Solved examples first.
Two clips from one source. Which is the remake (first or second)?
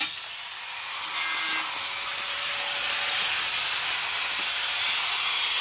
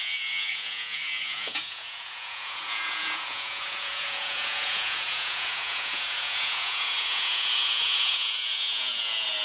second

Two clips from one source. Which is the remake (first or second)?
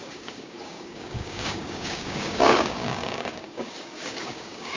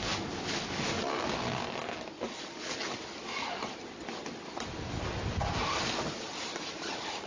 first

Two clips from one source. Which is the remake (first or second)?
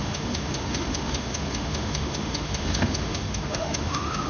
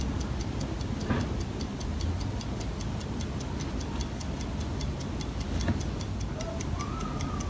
first